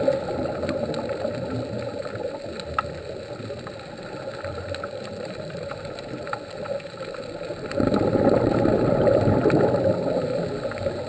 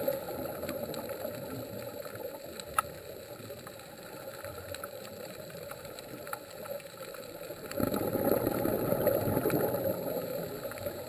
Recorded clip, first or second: first